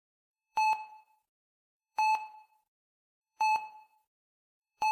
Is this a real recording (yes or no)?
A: no